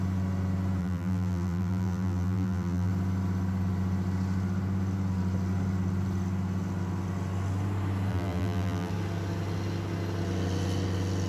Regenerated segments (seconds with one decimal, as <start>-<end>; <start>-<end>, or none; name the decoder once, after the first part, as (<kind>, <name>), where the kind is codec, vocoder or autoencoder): 0.8-2.9 (vocoder, BigVGAN v2); 8.1-8.9